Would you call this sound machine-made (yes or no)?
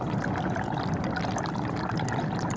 no